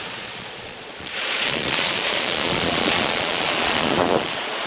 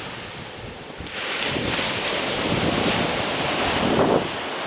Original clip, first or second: second